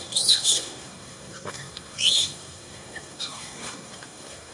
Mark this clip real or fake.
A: fake